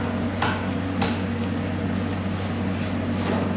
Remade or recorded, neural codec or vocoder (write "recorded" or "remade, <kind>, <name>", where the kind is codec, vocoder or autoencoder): recorded